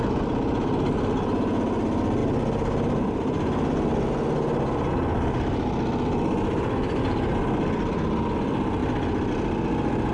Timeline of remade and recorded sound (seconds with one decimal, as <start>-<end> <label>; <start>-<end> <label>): 0.0-10.1 recorded